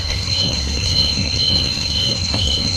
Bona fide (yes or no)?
no